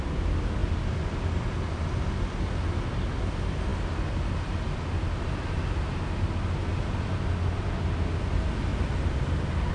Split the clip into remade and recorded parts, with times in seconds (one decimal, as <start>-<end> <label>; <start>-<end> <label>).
0.0-9.7 recorded